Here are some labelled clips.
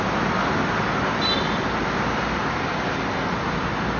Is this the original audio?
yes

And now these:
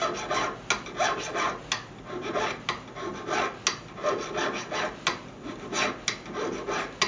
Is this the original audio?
yes